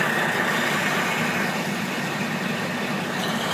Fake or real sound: real